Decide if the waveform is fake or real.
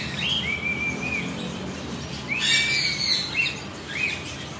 real